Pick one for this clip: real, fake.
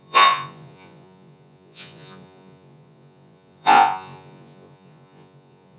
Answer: fake